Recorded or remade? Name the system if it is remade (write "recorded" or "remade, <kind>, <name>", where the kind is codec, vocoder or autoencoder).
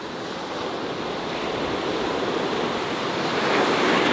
recorded